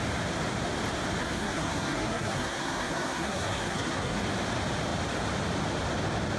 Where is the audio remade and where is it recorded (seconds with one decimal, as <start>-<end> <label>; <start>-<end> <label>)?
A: 0.0-1.2 recorded; 1.2-4.2 remade; 4.2-6.4 recorded